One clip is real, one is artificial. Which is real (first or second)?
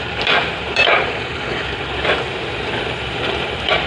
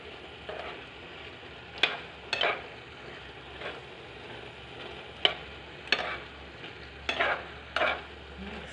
second